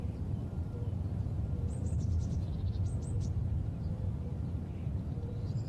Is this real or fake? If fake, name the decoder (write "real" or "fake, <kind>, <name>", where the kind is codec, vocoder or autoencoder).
fake, vocoder, BigVGAN v2